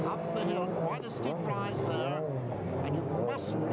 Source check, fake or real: real